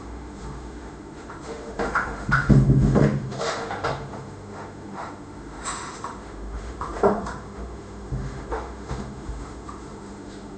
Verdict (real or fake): fake